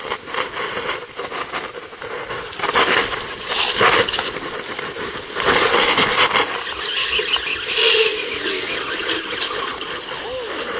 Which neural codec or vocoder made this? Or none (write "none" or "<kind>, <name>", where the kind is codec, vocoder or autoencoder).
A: none